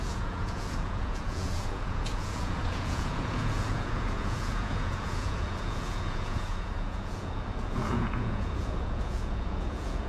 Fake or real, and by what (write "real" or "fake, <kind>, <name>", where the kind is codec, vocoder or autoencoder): fake, vocoder, Vocos